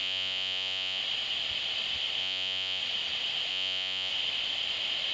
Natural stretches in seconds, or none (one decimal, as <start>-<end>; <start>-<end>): 1.0-2.2; 2.8-3.5; 4.1-5.1